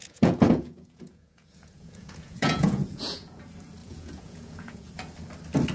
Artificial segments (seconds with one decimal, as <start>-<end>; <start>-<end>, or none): 0.0-3.4; 3.8-4.9